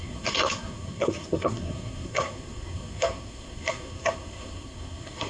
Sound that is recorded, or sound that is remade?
remade